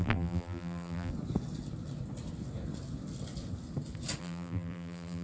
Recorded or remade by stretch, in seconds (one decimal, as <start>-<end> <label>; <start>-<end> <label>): 0.0-1.1 remade; 1.1-4.2 recorded; 4.2-5.2 remade